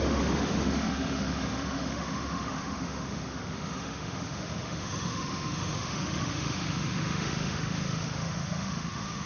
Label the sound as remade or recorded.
remade